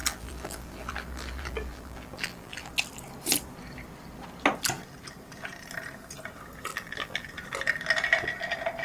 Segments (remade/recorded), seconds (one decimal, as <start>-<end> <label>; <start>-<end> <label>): 0.0-2.7 remade; 2.7-6.7 recorded; 6.7-7.3 remade; 7.3-8.8 recorded

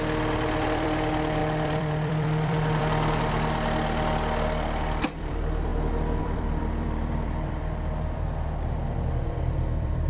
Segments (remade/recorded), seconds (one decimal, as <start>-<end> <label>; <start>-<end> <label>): 0.0-5.7 remade; 5.7-6.2 recorded; 6.2-10.1 remade

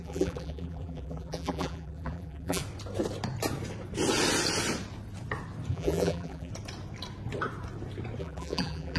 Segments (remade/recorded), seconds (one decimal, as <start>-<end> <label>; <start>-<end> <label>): 0.0-2.6 remade; 2.6-5.7 recorded; 5.7-6.5 remade; 6.5-8.2 recorded; 8.2-9.0 remade

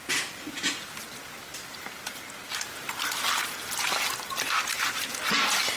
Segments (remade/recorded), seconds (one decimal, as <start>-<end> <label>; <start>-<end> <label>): 0.0-5.8 recorded

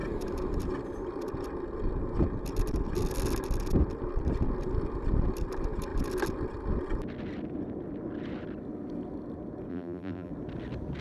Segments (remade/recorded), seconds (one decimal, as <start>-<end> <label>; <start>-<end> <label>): 0.0-9.7 recorded; 9.7-10.3 remade; 10.3-11.0 recorded

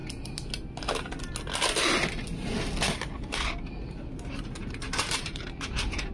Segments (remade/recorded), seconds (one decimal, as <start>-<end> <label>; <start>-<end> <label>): 0.0-3.7 recorded; 3.7-6.1 remade